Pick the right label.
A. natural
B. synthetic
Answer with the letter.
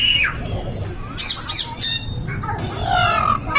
A